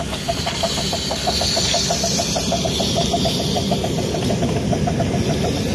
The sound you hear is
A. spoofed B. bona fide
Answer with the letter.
B